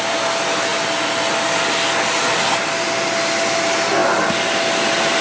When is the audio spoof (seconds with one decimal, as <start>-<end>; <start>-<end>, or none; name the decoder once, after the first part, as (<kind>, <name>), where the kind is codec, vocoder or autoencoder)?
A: none